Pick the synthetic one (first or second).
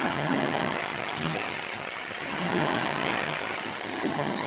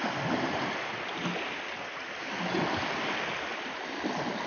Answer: first